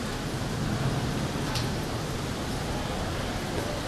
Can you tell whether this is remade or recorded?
recorded